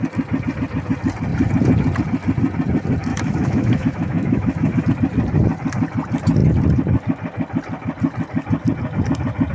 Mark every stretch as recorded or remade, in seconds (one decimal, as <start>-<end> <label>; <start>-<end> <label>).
0.0-3.1 recorded; 3.1-4.8 remade; 4.8-9.5 recorded